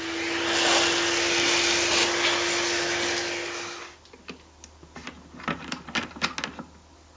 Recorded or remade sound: recorded